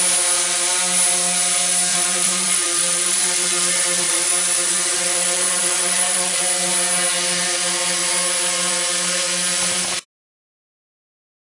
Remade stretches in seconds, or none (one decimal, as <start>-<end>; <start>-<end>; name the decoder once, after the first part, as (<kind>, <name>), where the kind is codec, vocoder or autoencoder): 1.9-6.4 (vocoder, Vocos)